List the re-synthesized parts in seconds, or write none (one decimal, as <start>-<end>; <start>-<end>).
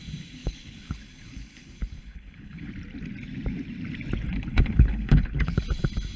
0.4-2.7; 4.5-5.6